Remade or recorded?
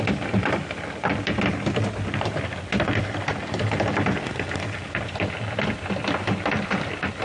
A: recorded